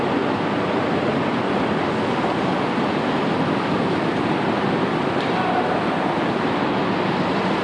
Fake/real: real